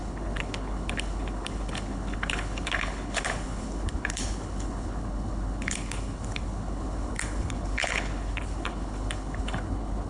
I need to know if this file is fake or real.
fake